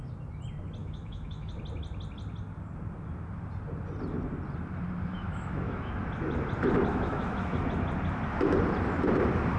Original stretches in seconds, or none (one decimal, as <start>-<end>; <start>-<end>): 0.0-0.8; 1.5-5.1; 5.9-6.9; 7.6-9.6